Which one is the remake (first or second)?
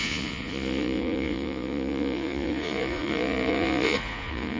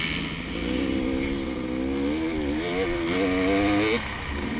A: first